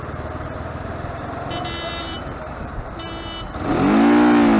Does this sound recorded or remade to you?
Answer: recorded